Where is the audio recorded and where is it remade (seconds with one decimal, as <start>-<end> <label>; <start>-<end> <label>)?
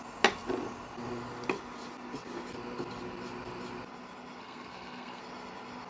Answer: 0.0-4.4 recorded; 4.4-5.2 remade; 5.2-5.9 recorded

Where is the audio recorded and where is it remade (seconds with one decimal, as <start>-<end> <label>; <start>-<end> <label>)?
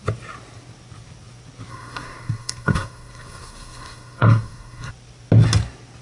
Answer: 0.0-1.7 recorded; 1.7-4.9 remade; 4.9-6.0 recorded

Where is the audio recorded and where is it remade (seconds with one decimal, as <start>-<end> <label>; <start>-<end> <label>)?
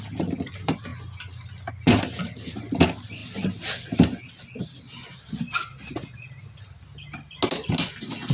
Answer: 0.0-8.3 recorded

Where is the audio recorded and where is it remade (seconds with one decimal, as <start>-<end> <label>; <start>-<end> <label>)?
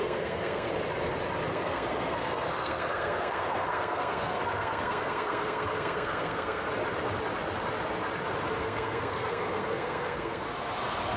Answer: 0.0-0.7 remade; 0.7-1.5 recorded; 1.5-6.6 remade; 6.6-8.6 recorded; 8.6-10.4 remade; 10.4-11.2 recorded